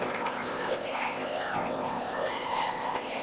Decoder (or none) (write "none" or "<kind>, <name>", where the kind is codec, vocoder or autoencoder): codec, ZipCodec